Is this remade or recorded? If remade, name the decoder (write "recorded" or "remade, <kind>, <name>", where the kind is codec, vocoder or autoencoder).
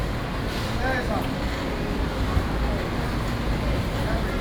recorded